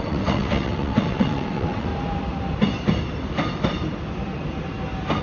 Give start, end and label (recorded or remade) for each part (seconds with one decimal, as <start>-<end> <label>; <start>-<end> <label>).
0.0-1.9 remade; 1.9-5.2 recorded